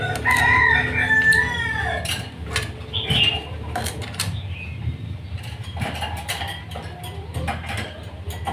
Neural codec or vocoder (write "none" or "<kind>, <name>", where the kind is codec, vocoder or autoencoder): none